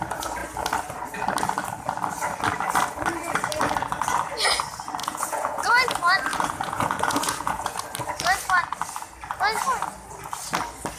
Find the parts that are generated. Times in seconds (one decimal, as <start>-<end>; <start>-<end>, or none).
5.0-5.6; 6.3-7.8